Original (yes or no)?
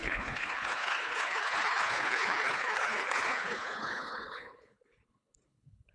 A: no